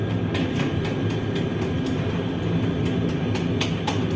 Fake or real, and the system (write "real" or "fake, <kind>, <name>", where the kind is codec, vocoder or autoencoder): real